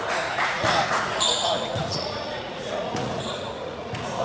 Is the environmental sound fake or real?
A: fake